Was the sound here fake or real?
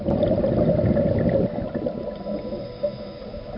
real